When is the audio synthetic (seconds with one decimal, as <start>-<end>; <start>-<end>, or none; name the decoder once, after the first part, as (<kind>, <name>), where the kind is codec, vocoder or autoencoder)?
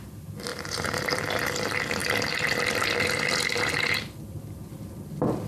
0.5-1.2 (vocoder, BigVGAN v2)